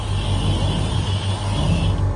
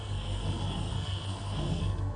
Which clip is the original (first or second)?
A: first